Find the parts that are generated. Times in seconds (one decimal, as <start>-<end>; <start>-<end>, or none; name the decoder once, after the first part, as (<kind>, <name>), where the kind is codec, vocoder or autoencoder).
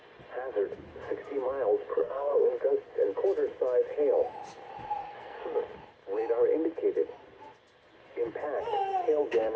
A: 1.9-2.5 (codec, SNAC); 5.0-5.6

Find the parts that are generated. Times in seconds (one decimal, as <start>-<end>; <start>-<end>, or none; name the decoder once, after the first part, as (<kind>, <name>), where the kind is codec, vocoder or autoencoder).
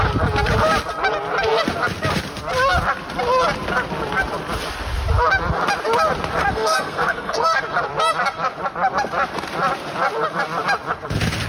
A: 6.4-7.6 (codec, SNAC)